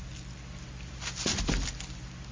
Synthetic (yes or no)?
no